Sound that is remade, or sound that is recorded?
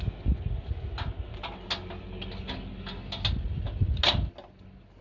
recorded